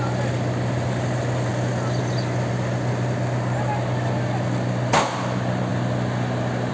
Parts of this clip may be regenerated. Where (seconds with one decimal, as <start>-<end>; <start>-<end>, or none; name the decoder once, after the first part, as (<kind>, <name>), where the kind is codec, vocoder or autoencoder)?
none